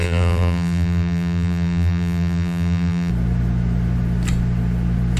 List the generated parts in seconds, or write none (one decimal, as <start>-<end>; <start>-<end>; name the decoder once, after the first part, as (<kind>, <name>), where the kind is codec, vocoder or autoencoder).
0.0-3.1 (vocoder, BigVGAN v2)

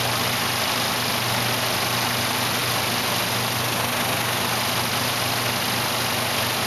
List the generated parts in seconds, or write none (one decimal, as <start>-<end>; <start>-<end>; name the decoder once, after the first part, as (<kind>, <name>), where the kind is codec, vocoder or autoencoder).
none

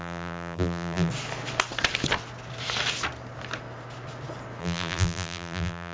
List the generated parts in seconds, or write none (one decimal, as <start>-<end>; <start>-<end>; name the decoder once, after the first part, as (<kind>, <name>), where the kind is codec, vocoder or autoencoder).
0.0-1.1 (vocoder, BigVGAN v2); 4.6-5.9

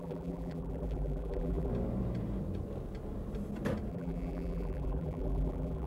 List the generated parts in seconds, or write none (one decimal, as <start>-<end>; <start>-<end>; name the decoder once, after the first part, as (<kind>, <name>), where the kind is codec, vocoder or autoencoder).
0.0-1.7 (vocoder, BigVGAN v2); 3.9-5.9

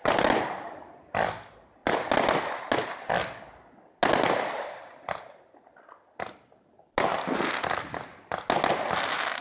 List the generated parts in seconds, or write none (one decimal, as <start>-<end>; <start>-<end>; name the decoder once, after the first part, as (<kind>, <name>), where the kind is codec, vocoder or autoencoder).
none

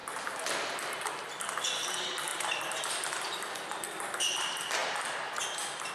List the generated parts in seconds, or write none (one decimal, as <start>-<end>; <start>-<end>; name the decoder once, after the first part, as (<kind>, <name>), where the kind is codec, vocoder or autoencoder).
2.3-2.9 (vocoder, BigVGAN v2)

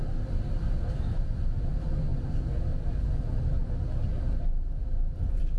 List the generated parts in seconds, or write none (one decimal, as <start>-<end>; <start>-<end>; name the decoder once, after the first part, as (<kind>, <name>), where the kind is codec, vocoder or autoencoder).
none

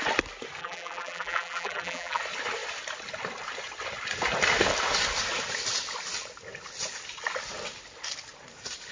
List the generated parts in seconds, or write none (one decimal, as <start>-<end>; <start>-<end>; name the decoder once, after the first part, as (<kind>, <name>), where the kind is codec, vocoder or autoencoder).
0.6-2.2 (vocoder, BigVGAN v2)